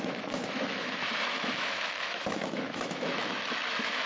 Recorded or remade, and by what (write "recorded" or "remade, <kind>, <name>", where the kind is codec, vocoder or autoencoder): remade, autoencoder, DAC-VAE